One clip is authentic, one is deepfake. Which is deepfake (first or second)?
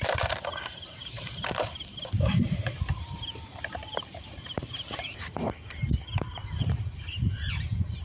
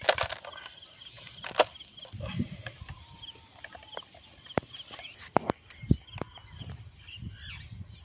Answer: first